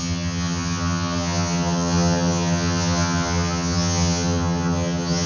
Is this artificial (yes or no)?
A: yes